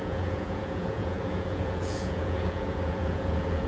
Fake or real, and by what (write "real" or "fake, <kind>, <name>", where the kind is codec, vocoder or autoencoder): fake, vocoder, Vocos